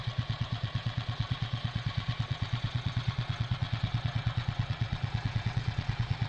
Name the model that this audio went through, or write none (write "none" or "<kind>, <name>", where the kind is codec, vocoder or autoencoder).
vocoder, Vocos